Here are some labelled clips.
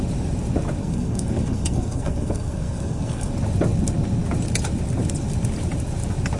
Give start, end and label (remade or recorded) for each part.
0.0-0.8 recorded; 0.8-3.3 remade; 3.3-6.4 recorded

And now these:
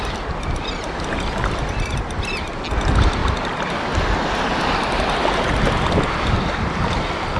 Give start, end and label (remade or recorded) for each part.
0.0-7.4 recorded

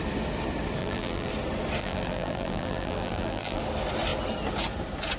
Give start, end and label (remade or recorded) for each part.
0.0-0.8 recorded; 0.8-1.3 remade; 1.3-1.8 recorded; 1.8-3.6 remade; 3.6-5.2 recorded

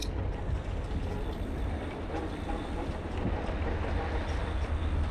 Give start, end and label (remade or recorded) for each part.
0.0-5.1 recorded